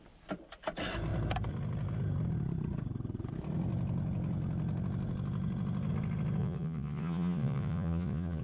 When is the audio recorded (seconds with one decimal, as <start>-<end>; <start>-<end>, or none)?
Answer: 0.0-6.4